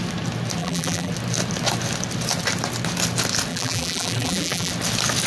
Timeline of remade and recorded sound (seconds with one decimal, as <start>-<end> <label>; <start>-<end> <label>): 0.0-0.6 recorded; 0.6-1.1 remade; 1.1-3.5 recorded; 3.5-4.7 remade; 4.7-5.3 recorded